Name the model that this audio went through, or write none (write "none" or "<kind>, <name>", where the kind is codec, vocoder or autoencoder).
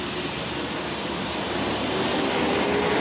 none